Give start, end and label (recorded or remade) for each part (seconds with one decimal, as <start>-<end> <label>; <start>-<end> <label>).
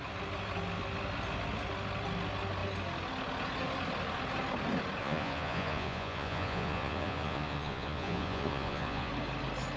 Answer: 0.0-5.0 recorded; 5.0-9.1 remade; 9.1-9.8 recorded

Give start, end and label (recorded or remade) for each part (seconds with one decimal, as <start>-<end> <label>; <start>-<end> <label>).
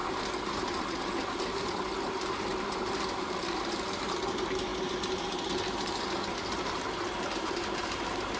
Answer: 0.0-8.4 recorded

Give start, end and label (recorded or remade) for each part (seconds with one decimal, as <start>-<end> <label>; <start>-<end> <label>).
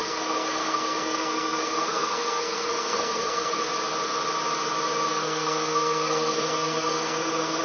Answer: 0.0-3.6 remade; 3.6-5.1 recorded; 5.1-7.6 remade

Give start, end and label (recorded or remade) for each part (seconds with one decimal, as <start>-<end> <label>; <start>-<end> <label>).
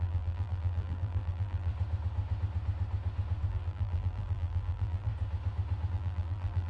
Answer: 0.0-1.7 remade; 1.7-3.5 recorded; 3.5-5.1 remade; 5.1-5.9 recorded; 5.9-6.7 remade